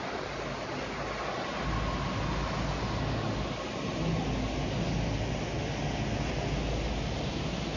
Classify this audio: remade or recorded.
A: recorded